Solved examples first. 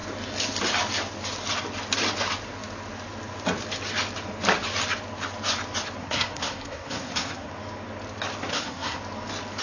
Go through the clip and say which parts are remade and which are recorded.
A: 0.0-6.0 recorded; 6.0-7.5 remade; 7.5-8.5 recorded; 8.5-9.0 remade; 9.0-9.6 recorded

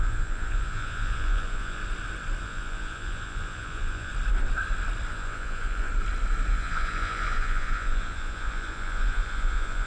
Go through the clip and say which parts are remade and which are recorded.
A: 0.0-1.8 remade; 1.8-2.4 recorded; 2.4-4.1 remade; 4.1-5.1 recorded; 5.1-5.9 remade; 5.9-6.5 recorded; 6.5-9.9 remade

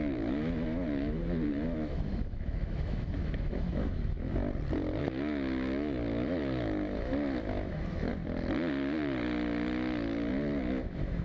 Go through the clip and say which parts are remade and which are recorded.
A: 0.0-4.4 remade; 4.4-5.0 recorded; 5.0-8.1 remade; 8.1-10.3 recorded; 10.3-11.2 remade

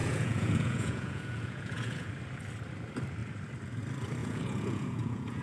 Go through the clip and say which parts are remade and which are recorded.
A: 0.0-2.1 remade; 2.1-4.2 recorded; 4.2-5.4 remade

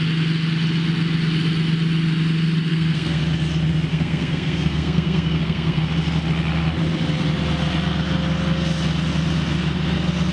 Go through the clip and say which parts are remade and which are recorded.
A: 0.0-2.7 recorded; 2.7-3.2 remade; 3.2-3.9 recorded; 3.9-5.8 remade; 5.8-10.3 recorded

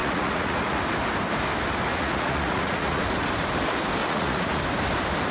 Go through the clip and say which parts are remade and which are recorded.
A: 0.0-0.8 remade; 0.8-1.9 recorded; 1.9-3.0 remade; 3.0-4.0 recorded; 4.0-4.6 remade; 4.6-5.3 recorded

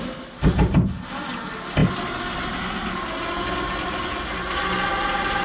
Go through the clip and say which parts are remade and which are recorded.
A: 0.0-5.4 recorded